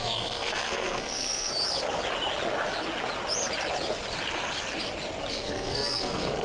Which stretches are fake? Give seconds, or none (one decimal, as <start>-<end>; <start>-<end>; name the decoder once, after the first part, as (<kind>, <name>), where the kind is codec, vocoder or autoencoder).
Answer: 0.0-1.5 (codec, SNAC); 5.3-6.4